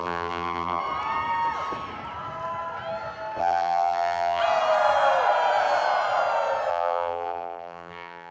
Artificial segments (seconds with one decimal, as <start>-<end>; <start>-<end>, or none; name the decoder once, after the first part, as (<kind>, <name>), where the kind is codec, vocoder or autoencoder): 0.0-0.8 (vocoder, BigVGAN v2); 3.4-4.4; 6.7-8.3